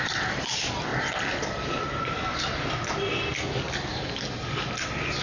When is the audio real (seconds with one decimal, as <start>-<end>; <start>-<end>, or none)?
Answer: 0.9-2.0; 3.3-5.2